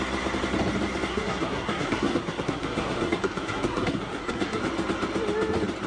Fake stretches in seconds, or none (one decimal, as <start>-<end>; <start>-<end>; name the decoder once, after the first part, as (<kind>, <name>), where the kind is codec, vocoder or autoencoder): 1.1-4.6 (codec, SNAC)